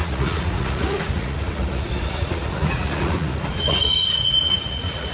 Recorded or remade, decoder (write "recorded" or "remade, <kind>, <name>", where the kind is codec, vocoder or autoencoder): remade, vocoder, Vocos